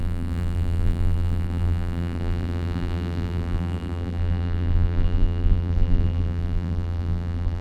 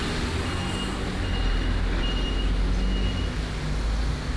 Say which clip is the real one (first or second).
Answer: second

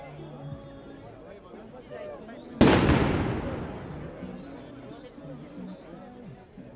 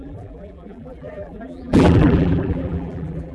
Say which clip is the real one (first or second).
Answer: first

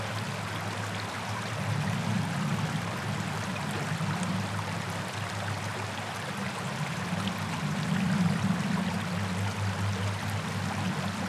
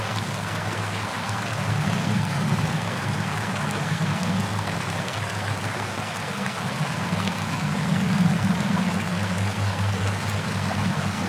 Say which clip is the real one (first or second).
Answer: first